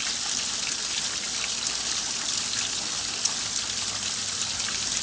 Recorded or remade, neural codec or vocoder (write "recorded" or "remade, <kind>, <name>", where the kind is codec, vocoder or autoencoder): recorded